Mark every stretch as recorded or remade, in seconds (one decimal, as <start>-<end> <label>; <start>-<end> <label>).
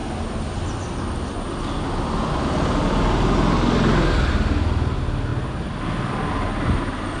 0.0-7.2 recorded